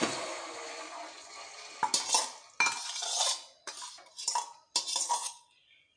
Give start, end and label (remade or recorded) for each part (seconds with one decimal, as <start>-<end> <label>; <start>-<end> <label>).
0.0-1.5 remade; 1.5-5.1 recorded; 5.1-6.0 remade